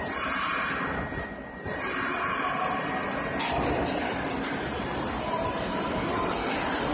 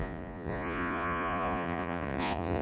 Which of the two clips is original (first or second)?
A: first